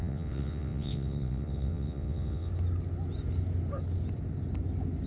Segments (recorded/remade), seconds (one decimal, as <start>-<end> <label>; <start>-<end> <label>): 0.0-2.5 remade; 2.5-5.1 recorded

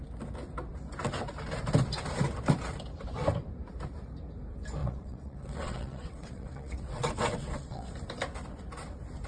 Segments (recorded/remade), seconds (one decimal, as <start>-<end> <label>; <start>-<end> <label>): 0.0-4.8 recorded; 4.8-7.9 remade; 7.9-9.3 recorded

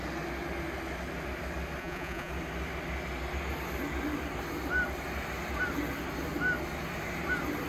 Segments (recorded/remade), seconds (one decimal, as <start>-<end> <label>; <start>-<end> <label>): 0.0-1.8 recorded; 1.8-2.3 remade; 2.3-7.7 recorded

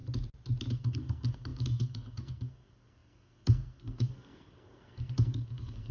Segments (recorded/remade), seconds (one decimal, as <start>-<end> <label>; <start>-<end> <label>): 0.0-0.7 recorded; 0.7-5.9 remade

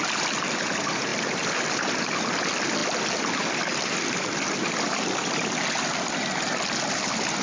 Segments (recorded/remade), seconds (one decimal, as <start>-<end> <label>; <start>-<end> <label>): 0.0-7.4 recorded

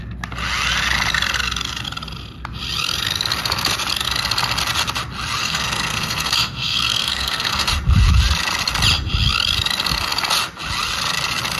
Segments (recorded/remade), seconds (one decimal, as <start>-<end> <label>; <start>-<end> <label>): 0.0-5.4 recorded; 5.4-7.7 remade; 7.7-11.6 recorded

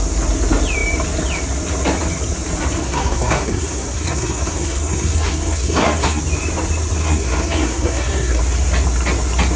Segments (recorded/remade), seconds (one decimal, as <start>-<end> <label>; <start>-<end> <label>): 0.0-2.8 recorded; 2.8-6.2 remade; 6.2-7.0 recorded; 7.0-8.4 remade; 8.4-9.6 recorded

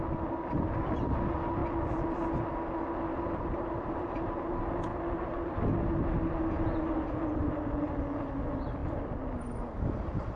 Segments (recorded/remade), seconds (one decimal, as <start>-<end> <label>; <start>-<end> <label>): 0.0-3.1 recorded; 3.1-4.5 remade; 4.5-10.4 recorded